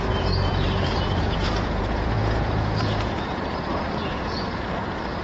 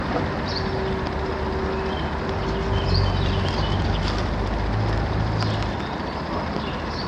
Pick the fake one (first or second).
first